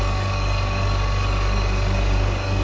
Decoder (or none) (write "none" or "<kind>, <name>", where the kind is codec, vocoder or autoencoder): codec, DAC